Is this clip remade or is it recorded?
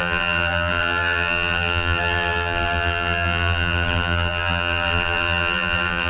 remade